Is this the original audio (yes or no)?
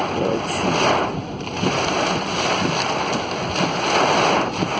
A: yes